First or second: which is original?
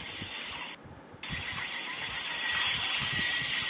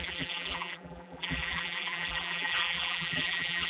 first